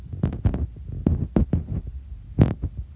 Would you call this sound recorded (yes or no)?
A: yes